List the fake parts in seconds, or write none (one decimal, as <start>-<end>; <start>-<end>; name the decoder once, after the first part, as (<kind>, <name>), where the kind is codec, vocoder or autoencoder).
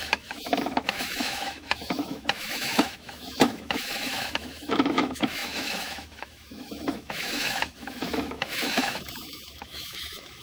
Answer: 0.0-10.4 (autoencoder, DAC-VAE)